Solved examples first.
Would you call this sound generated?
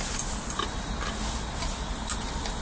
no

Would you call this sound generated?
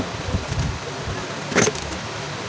no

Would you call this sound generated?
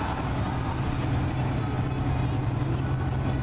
no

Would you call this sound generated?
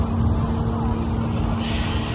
no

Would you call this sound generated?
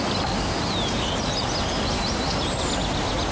no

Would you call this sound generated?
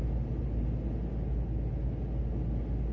no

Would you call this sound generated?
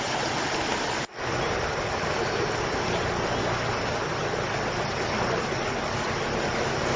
no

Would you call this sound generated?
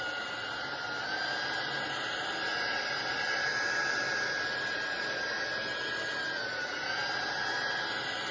no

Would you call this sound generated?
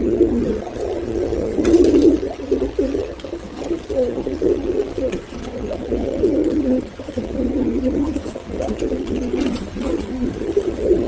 yes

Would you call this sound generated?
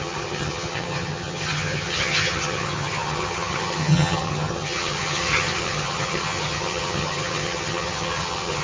yes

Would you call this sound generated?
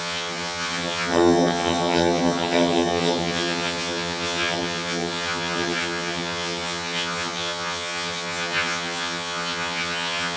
yes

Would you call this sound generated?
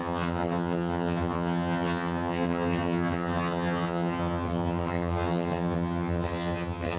yes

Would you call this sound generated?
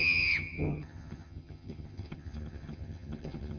yes